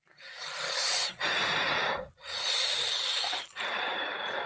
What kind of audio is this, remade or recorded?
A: recorded